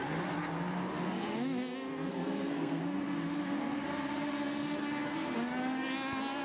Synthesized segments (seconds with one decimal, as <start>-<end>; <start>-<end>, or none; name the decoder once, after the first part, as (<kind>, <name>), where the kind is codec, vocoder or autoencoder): 2.1-2.8 (codec, SNAC)